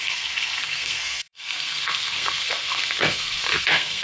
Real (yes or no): no